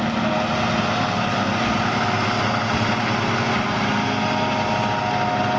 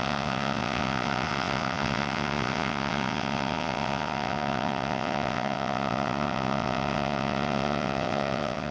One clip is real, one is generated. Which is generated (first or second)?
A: second